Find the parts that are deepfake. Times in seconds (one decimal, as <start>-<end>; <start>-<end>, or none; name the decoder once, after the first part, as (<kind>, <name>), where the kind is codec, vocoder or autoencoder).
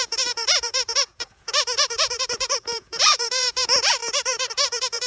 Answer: 0.0-5.1 (vocoder, Vocos)